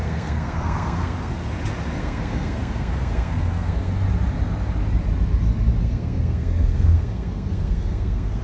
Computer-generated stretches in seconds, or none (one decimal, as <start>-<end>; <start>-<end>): 0.0-1.3; 2.0-3.9; 5.8-8.4